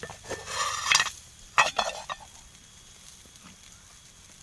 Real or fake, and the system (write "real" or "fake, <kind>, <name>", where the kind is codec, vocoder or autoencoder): real